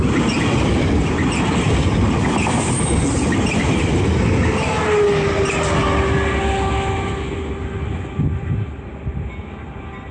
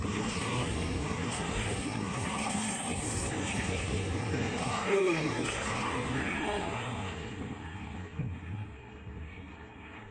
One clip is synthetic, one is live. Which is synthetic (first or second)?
second